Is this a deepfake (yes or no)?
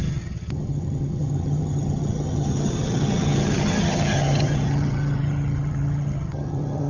yes